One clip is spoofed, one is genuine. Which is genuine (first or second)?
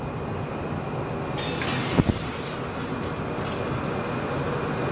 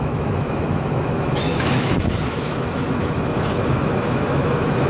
first